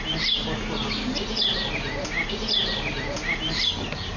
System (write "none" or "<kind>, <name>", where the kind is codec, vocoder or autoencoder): none